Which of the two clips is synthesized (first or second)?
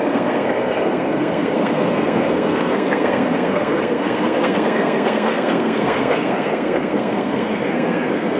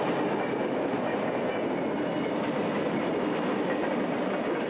first